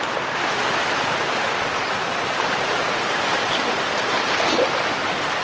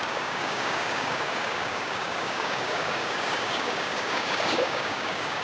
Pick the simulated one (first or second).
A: second